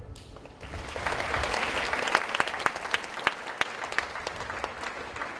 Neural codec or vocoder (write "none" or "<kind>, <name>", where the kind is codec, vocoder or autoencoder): none